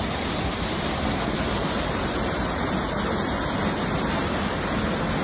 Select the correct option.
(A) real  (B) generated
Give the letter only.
A